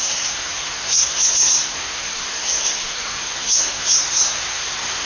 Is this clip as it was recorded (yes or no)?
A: no